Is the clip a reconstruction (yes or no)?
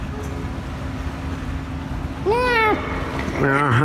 no